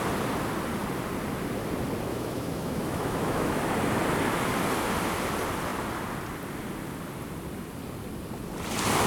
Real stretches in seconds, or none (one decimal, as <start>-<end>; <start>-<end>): 0.0-2.1; 3.6-9.1